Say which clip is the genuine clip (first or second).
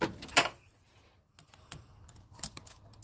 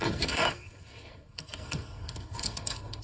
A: first